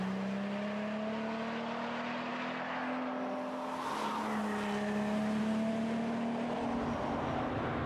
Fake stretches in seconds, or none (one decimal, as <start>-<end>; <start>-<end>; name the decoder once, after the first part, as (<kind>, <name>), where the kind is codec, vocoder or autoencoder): none